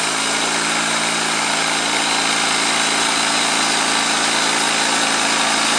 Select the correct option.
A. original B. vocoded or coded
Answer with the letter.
A